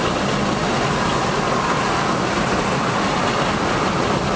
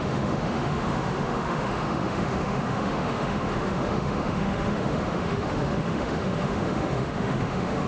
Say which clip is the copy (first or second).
second